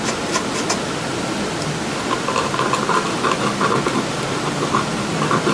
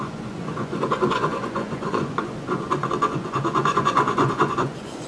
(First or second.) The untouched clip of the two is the first